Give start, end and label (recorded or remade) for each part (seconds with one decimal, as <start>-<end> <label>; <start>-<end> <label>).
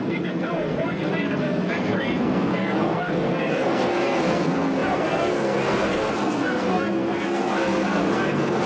0.0-8.7 remade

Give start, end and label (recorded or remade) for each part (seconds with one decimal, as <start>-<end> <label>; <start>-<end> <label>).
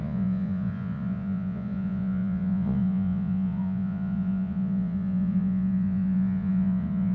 0.0-7.1 remade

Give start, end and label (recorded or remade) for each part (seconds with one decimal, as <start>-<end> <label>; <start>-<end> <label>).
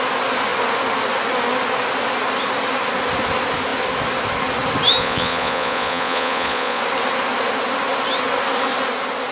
0.0-5.0 recorded; 5.0-6.8 remade; 6.8-9.3 recorded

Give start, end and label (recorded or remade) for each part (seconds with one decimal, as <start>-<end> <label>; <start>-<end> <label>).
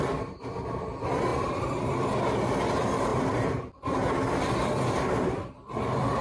0.0-1.3 recorded; 1.3-2.0 remade; 2.0-3.1 recorded; 3.1-3.7 remade; 3.7-6.2 recorded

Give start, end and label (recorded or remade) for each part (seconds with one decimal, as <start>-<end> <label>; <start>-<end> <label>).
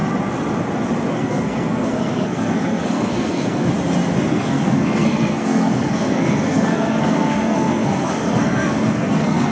0.0-1.1 recorded; 1.1-3.7 remade; 3.7-4.3 recorded; 4.3-9.5 remade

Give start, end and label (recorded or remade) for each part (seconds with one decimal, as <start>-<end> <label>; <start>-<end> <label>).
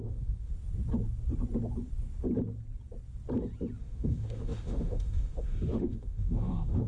0.0-0.5 remade; 0.5-3.8 recorded; 3.8-6.9 remade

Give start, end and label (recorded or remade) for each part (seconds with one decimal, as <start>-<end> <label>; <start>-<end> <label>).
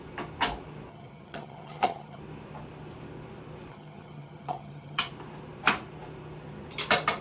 0.0-0.9 recorded; 0.9-2.2 remade; 2.2-3.7 recorded; 3.7-5.1 remade; 5.1-7.2 recorded